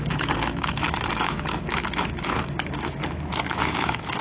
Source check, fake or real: fake